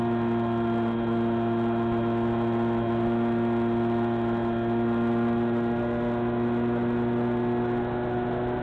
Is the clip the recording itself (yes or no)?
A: yes